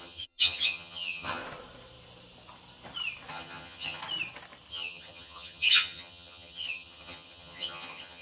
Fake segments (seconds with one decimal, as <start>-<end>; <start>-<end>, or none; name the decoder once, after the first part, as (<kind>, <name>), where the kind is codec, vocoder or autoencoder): 0.0-1.4 (vocoder, HiFi-GAN); 3.3-4.0; 4.7-8.2